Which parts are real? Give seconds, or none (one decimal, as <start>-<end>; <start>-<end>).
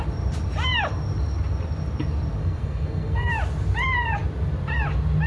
0.0-2.4; 3.3-5.3